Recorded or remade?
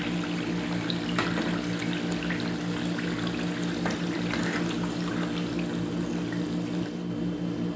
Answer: recorded